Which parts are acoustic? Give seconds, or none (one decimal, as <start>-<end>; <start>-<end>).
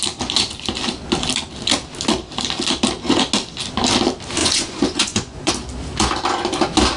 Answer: 0.0-4.4; 5.5-7.0